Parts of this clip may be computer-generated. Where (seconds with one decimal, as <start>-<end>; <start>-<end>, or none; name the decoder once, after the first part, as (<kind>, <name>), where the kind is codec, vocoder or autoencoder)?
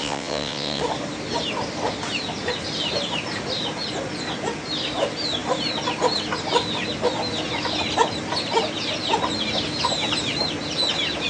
0.0-0.8 (vocoder, WaveNeXt)